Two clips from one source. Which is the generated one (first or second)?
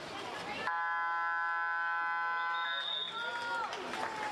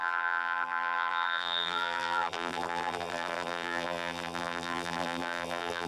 second